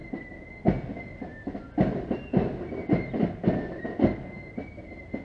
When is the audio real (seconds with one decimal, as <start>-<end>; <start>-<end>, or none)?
0.5-5.2